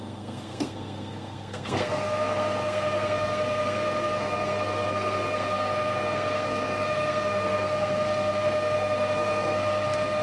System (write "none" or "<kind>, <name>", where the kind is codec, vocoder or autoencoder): codec, SNAC